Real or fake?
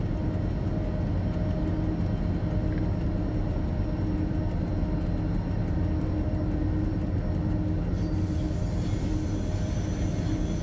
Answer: real